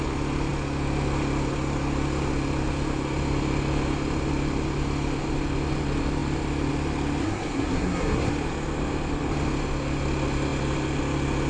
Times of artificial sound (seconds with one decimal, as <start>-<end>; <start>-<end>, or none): 7.2-8.3